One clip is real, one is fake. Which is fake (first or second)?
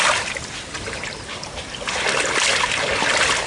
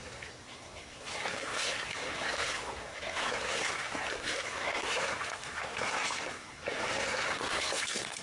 second